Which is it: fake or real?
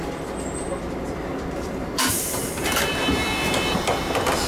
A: fake